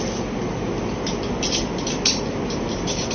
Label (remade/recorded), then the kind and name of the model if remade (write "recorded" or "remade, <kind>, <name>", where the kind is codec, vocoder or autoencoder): recorded